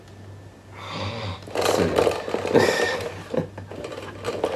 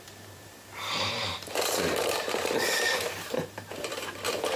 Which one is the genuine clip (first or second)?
first